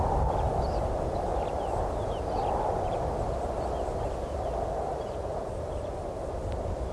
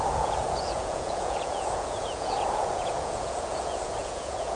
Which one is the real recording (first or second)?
first